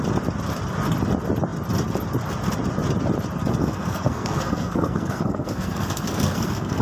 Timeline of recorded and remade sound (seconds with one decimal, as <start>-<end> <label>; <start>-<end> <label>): 0.0-3.6 recorded; 3.6-6.8 remade